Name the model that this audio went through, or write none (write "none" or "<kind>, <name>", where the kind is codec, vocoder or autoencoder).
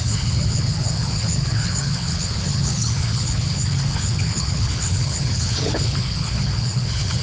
codec, HILCodec